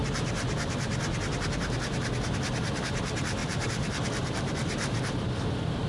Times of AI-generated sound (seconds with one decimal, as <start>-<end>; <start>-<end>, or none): none